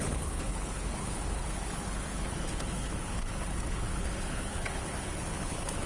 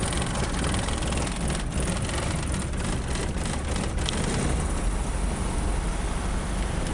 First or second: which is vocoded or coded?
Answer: first